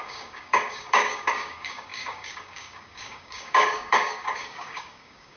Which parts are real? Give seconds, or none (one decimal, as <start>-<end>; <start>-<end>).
none